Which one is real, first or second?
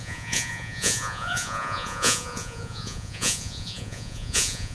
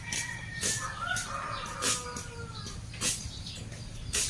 second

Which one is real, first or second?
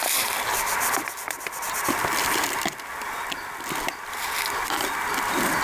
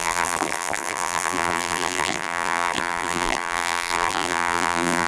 first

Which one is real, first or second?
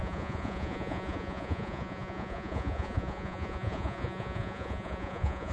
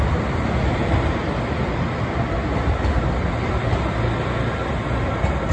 second